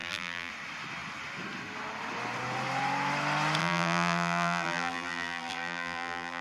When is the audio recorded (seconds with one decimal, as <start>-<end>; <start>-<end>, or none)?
0.5-3.6